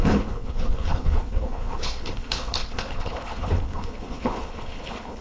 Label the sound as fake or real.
fake